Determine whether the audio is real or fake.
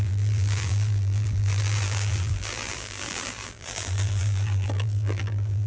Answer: fake